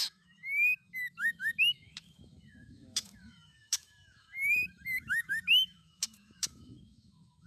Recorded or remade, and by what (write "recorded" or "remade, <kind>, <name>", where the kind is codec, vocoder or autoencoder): remade, autoencoder, DAC-VAE